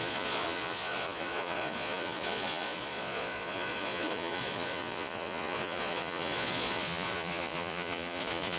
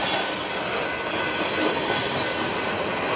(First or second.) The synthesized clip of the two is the first